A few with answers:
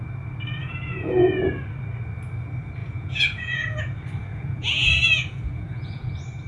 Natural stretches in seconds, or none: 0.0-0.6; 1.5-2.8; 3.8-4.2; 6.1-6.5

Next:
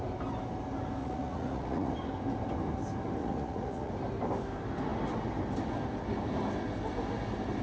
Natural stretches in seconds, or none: 0.0-1.0; 1.9-3.2; 3.9-7.6

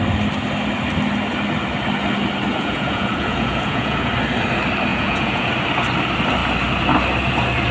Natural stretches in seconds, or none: 0.0-2.5; 4.1-4.9; 5.5-7.7

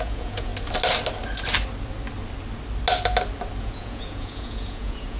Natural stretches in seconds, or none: 0.5-3.6